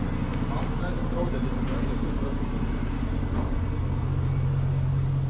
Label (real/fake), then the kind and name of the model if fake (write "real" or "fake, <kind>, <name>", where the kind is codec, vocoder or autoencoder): real